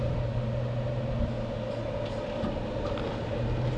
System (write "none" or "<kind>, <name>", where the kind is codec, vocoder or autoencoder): none